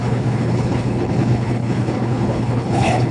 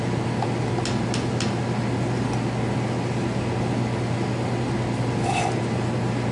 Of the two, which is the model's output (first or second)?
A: first